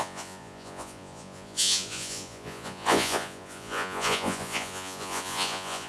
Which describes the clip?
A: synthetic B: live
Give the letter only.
A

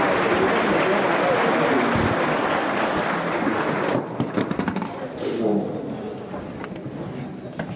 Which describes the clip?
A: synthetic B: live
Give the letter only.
B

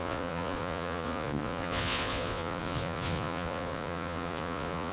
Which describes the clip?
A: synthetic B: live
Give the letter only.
A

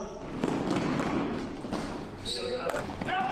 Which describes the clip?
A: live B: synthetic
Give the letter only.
B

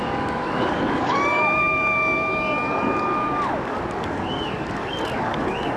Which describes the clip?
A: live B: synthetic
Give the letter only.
B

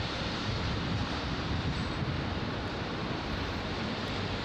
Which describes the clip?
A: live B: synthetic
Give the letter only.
B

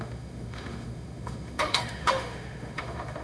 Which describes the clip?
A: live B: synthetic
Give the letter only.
B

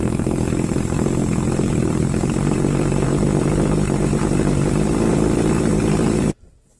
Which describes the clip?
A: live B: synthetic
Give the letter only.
B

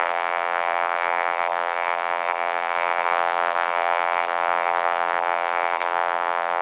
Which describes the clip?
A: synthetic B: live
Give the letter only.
A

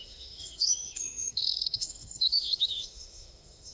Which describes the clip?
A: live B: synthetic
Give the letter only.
B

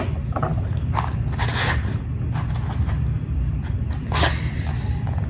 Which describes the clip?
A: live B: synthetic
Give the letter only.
A